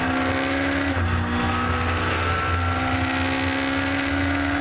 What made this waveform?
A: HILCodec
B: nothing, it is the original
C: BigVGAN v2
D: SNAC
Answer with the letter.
B